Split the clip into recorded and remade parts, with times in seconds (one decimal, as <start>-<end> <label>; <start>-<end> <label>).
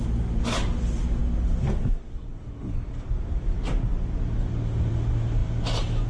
0.0-6.1 recorded